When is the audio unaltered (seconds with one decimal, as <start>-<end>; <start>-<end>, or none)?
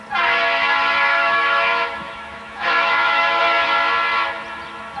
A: 0.0-1.1; 3.4-5.0